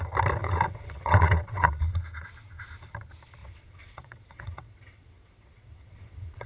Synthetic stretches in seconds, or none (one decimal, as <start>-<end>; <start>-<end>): 0.4-2.0; 3.4-6.5